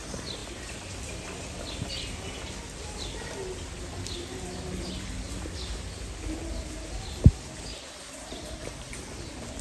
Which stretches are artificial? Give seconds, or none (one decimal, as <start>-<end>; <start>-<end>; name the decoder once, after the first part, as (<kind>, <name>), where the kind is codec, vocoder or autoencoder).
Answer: none